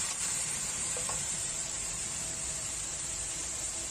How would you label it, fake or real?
fake